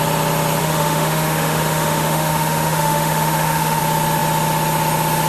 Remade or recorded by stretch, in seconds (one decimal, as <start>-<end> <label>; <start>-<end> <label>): 0.0-0.6 recorded; 0.6-3.8 remade; 3.8-5.3 recorded